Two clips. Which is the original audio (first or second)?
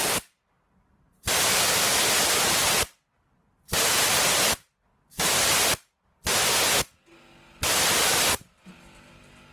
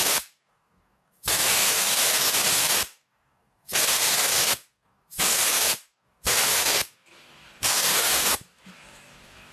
first